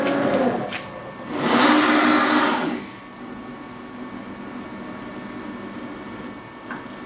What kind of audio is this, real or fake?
real